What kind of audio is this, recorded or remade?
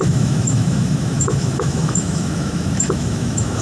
remade